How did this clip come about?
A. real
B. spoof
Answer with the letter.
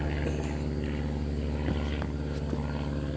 A